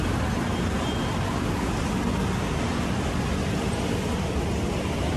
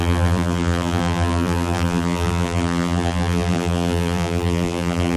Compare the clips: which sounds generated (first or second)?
second